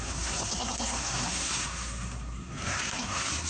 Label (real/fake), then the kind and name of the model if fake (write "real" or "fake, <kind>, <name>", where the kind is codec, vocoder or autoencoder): fake, codec, SNAC